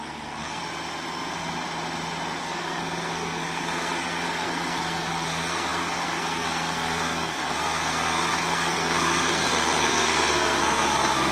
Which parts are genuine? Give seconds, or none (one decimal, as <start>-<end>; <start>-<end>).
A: 0.6-2.4